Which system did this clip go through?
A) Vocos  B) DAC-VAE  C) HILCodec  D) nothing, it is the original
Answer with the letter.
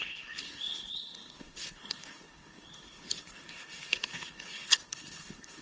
C